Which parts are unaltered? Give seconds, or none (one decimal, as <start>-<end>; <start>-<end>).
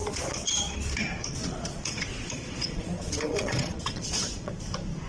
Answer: 0.6-1.4; 4.5-5.1